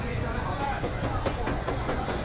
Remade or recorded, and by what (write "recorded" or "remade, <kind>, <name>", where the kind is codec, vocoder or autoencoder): remade, vocoder, Vocos